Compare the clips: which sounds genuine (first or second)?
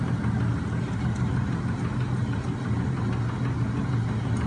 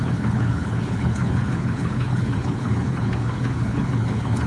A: first